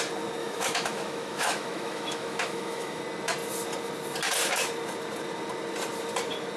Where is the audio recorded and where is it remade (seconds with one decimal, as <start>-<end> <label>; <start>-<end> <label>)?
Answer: 0.0-0.4 recorded; 0.4-3.0 remade; 3.0-6.6 recorded